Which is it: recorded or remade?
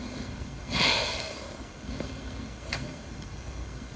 remade